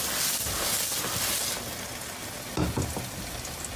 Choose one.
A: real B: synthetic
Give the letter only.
A